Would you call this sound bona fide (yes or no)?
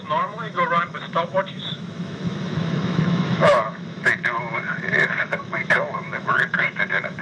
no